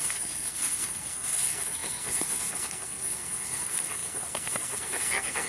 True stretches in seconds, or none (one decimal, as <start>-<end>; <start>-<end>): none